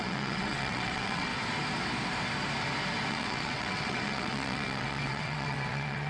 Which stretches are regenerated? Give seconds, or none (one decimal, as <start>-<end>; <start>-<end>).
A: 0.0-1.3; 3.1-6.1